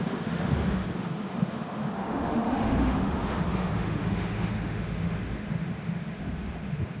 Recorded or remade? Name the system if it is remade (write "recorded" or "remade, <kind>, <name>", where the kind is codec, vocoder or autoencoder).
remade, autoencoder, DAC-VAE